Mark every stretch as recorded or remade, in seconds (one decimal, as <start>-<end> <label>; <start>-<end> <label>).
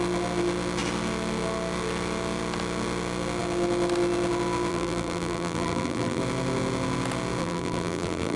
0.0-4.7 recorded; 4.7-6.2 remade; 6.2-7.4 recorded; 7.4-8.4 remade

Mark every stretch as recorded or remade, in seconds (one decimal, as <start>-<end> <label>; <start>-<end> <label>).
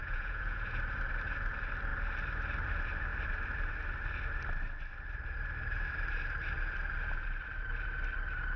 0.0-0.8 remade; 0.8-8.6 recorded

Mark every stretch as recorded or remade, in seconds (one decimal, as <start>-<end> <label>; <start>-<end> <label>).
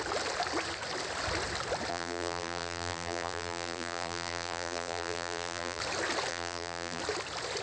0.0-1.9 recorded; 1.9-5.8 remade; 5.8-6.3 recorded; 6.3-7.0 remade; 7.0-7.6 recorded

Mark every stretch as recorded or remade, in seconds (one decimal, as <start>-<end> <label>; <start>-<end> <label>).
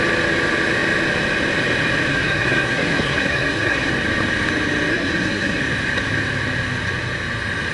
0.0-2.1 recorded; 2.1-3.9 remade; 3.9-4.9 recorded; 4.9-5.6 remade; 5.6-7.7 recorded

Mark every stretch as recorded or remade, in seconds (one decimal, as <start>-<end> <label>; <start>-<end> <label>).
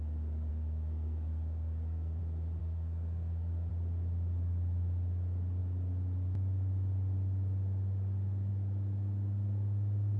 0.0-0.5 recorded; 0.5-2.2 remade; 2.2-2.6 recorded; 2.6-3.7 remade; 3.7-10.2 recorded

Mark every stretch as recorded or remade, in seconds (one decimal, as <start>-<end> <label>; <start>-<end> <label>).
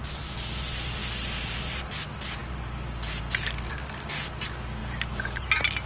0.0-5.9 recorded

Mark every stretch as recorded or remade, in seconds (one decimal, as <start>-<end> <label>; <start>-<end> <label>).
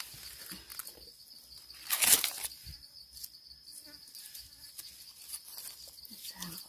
0.0-6.7 recorded